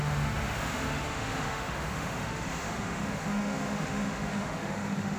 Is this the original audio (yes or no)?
no